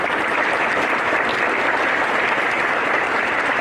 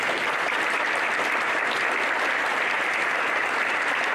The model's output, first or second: first